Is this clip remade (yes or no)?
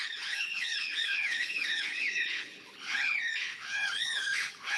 yes